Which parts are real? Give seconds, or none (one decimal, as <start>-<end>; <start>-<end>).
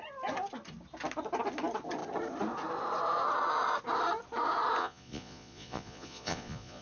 0.0-4.8